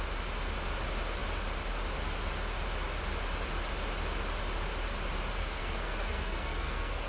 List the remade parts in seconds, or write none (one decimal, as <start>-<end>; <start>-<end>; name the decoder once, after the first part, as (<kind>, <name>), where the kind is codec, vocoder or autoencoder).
5.4-7.1 (codec, SNAC)